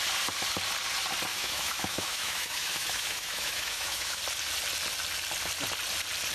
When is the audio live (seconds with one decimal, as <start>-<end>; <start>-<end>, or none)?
0.0-1.3; 4.2-6.3